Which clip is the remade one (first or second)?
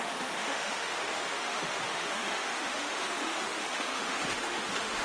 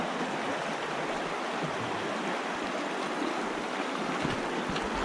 first